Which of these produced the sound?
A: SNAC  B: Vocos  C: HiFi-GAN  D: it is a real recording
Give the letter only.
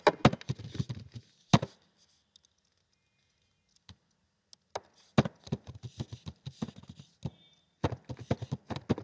D